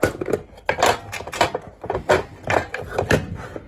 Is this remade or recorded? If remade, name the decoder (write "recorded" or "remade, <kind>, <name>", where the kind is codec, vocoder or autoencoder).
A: recorded